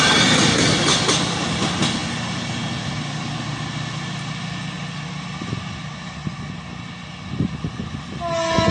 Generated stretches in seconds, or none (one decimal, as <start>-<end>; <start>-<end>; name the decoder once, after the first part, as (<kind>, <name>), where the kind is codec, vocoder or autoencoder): none